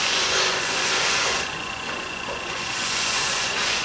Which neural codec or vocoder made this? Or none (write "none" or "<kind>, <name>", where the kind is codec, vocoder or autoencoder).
vocoder, Vocos